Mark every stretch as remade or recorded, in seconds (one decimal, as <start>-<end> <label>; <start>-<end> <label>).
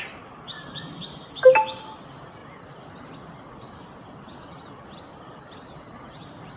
0.0-6.6 recorded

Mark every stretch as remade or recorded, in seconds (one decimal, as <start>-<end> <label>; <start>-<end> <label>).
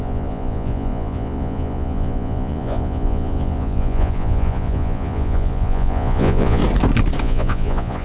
0.0-6.6 remade; 6.6-7.2 recorded; 7.2-8.0 remade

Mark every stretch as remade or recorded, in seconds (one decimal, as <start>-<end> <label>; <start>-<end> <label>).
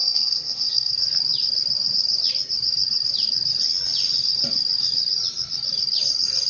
0.0-0.9 remade; 0.9-6.5 recorded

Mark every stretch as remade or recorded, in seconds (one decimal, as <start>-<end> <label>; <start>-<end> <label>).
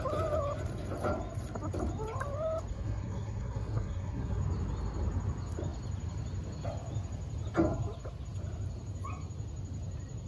0.0-2.7 recorded; 2.7-4.4 remade; 4.4-10.3 recorded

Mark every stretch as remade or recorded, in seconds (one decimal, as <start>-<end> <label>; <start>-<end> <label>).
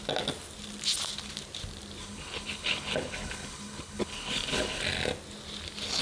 0.0-2.0 recorded; 2.0-4.8 remade; 4.8-6.0 recorded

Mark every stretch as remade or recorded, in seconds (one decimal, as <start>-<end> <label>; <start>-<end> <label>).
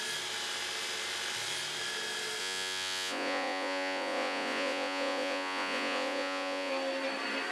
0.0-2.4 recorded; 2.4-6.7 remade; 6.7-7.5 recorded